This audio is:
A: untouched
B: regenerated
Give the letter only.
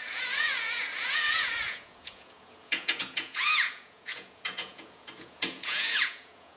B